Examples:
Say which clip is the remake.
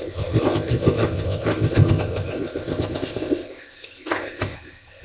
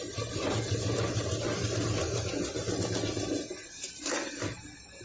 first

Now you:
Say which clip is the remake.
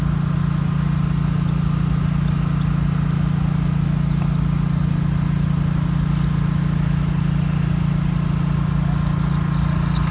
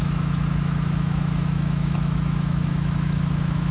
second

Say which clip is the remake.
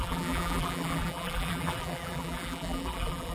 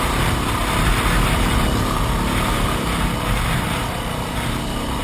first